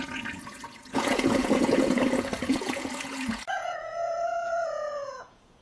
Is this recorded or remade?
remade